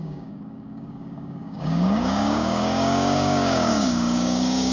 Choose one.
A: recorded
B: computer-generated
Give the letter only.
B